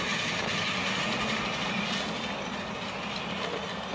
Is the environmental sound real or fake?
real